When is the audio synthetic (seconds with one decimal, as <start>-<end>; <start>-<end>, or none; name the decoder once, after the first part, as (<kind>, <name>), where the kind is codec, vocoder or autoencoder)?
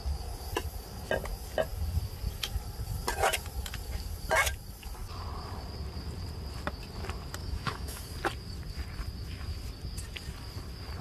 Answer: 7.4-8.0 (autoencoder, DAC-VAE)